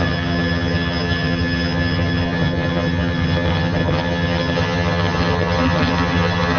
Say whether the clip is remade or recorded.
remade